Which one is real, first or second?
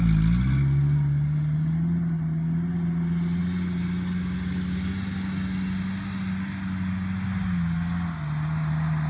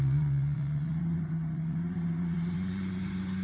first